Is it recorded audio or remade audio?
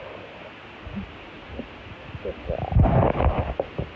recorded